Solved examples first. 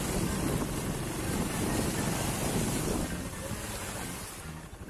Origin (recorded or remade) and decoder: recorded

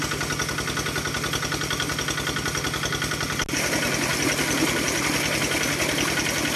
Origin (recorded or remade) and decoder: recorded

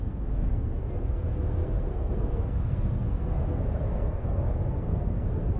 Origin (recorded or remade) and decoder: remade, codec, SNAC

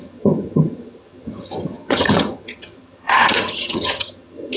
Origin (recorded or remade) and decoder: remade, vocoder, HiFi-GAN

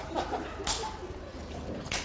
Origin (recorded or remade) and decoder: recorded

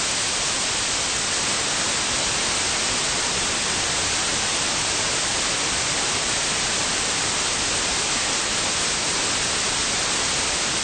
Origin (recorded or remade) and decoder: recorded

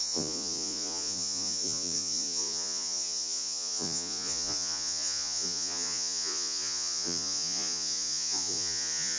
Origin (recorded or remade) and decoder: remade, vocoder, Vocos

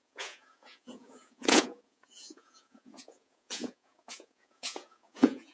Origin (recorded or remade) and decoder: remade, vocoder, Vocos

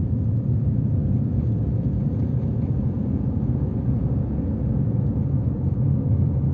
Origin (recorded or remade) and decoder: remade, vocoder, Vocos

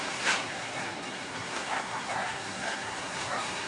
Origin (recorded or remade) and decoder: remade, codec, SNAC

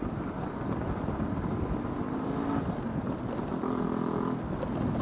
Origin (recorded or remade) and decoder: recorded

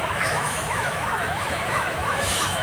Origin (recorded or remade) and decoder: remade, autoencoder, DAC-VAE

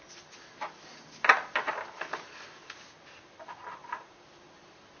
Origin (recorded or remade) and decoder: recorded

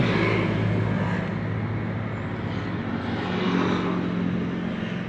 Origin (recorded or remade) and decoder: recorded